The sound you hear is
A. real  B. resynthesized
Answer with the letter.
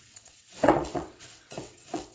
B